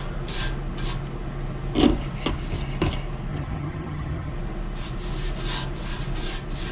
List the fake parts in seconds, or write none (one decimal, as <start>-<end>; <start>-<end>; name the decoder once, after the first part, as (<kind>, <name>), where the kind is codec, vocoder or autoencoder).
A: 3.3-4.3 (vocoder, HiFi-GAN)